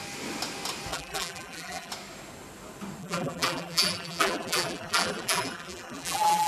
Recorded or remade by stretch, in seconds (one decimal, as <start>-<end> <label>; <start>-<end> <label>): 0.0-0.9 recorded; 0.9-1.9 remade; 1.9-3.0 recorded; 3.0-6.5 remade